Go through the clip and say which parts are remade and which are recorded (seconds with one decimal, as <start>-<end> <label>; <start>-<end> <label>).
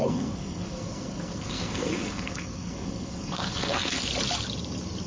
0.0-4.1 remade; 4.1-5.1 recorded